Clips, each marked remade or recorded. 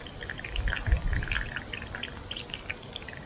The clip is recorded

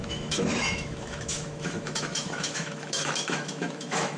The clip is remade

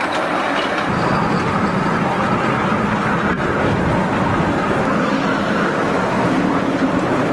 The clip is recorded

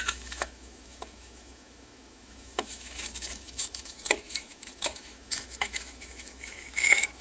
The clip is remade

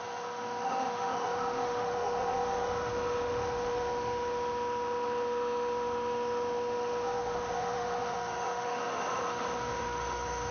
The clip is remade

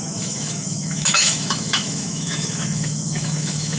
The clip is remade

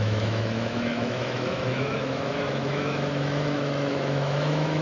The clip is remade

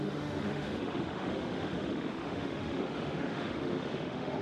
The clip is remade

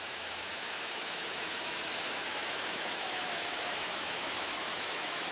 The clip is remade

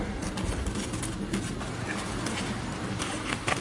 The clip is recorded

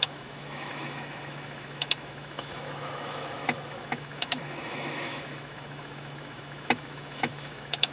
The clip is remade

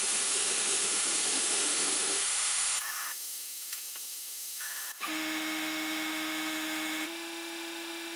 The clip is remade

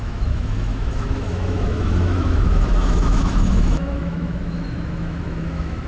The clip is remade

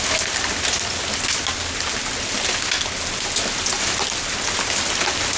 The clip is recorded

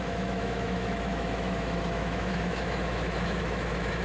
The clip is remade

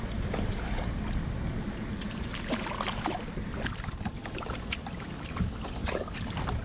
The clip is recorded